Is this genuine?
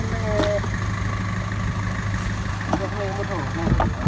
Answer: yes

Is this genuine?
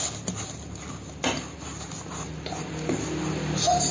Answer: yes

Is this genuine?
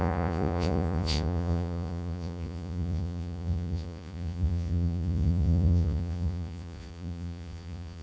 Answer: no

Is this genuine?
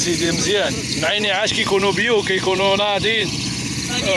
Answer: no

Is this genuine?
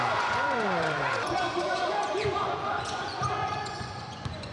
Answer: no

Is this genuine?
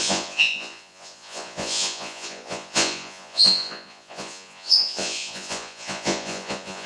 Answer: no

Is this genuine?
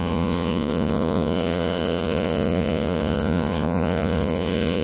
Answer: no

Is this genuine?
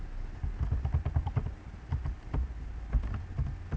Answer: yes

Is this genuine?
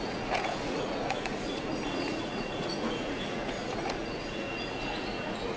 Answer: no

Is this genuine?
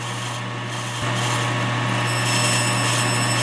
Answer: yes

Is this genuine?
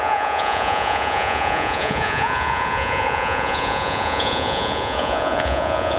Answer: no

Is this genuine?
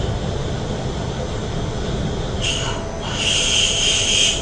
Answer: yes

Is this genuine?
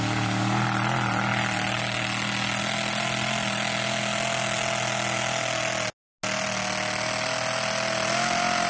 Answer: yes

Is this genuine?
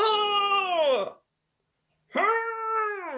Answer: yes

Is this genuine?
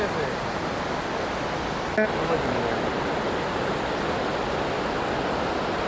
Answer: yes